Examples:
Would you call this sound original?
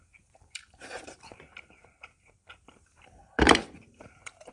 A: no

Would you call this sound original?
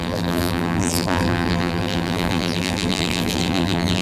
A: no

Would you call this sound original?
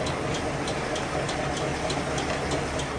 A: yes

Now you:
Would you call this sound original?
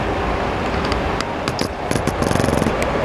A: yes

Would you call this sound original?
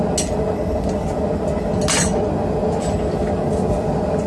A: yes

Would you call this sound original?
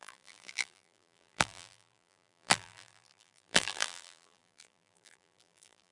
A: no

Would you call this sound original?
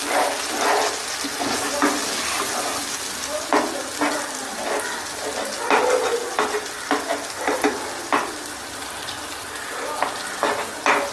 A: yes